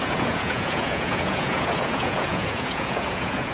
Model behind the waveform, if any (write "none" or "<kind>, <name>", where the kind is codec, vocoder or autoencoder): vocoder, Vocos